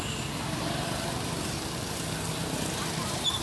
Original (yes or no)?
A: yes